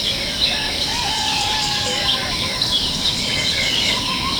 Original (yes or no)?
no